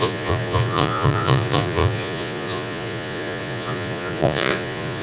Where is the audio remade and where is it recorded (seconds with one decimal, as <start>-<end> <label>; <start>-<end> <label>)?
0.0-5.0 remade